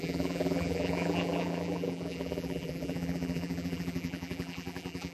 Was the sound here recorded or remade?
remade